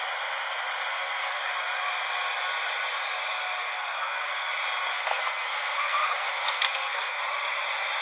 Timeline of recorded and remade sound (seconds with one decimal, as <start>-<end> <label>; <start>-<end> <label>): 0.0-0.9 recorded; 0.9-1.4 remade; 1.4-3.6 recorded; 3.6-4.5 remade; 4.5-4.9 recorded; 4.9-7.2 remade; 7.2-8.0 recorded